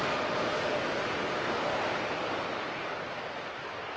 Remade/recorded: recorded